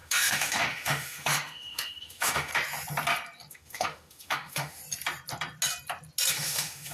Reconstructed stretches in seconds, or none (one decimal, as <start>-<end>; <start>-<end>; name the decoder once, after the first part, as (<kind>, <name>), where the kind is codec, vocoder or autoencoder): 0.0-2.5 (autoencoder, DAC-VAE); 3.5-4.8; 6.3-6.9